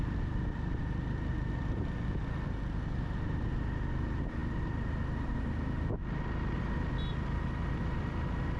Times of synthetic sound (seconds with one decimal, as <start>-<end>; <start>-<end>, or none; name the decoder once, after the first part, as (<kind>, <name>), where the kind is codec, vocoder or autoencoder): none